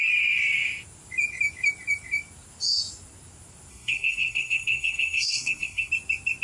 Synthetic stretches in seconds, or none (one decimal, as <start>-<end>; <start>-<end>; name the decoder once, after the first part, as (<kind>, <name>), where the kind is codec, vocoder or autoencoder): 3.7-5.9 (codec, SNAC)